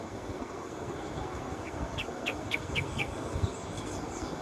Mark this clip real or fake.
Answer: fake